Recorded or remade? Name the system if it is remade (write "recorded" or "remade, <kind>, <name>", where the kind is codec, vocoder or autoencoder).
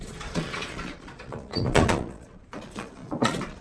remade, vocoder, Vocos